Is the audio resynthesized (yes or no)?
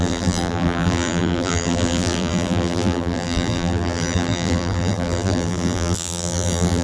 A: yes